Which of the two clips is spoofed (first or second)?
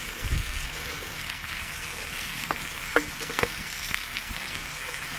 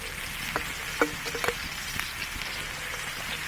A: first